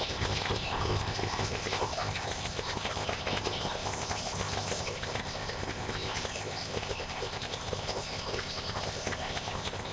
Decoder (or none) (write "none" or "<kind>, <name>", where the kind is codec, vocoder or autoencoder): codec, ZipCodec